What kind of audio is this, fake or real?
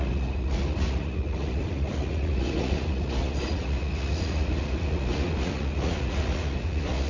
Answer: fake